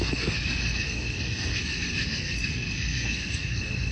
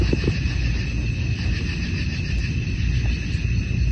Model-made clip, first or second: first